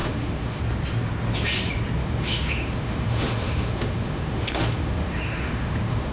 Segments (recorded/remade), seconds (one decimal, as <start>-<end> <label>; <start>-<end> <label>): 0.0-0.6 remade; 0.6-2.0 recorded; 2.0-6.1 remade